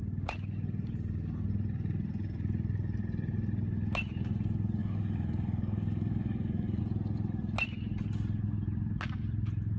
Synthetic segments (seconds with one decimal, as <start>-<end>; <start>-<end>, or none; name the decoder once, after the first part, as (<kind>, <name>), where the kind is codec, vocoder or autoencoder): 4.8-6.8 (codec, DAC)

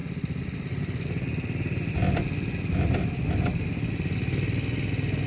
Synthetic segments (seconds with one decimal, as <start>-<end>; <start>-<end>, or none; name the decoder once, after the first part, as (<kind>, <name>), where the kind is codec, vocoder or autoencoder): none